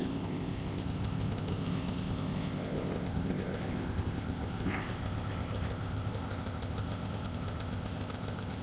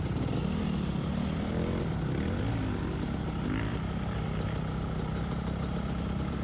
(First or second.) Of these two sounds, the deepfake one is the first